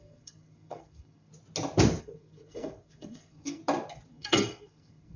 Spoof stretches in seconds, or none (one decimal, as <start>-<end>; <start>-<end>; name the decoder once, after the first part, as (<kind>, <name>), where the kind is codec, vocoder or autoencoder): 0.0-1.3 (codec, SNAC); 2.0-3.6; 4.1-5.2